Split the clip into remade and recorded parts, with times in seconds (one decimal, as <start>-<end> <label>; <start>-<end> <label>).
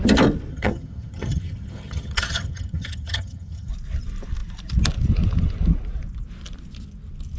0.0-0.5 recorded; 0.5-3.7 remade; 3.7-7.4 recorded